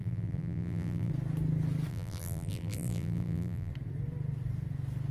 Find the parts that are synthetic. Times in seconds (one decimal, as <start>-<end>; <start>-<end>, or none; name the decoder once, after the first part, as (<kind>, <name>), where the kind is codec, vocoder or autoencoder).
0.0-1.1 (vocoder, BigVGAN v2); 1.9-3.7